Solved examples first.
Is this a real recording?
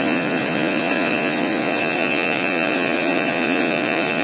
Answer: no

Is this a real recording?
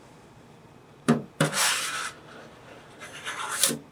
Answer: no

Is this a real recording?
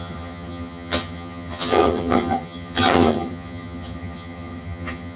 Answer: no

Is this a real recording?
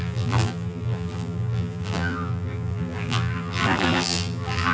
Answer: no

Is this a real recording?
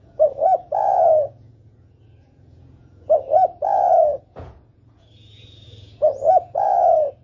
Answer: no